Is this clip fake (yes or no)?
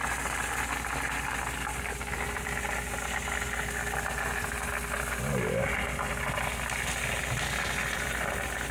yes